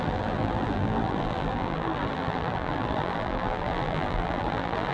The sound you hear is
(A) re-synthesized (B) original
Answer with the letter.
A